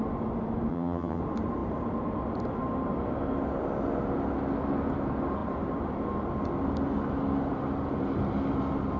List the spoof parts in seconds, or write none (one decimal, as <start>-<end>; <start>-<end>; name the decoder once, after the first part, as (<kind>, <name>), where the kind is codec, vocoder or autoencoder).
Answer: 0.7-1.2 (vocoder, HiFi-GAN)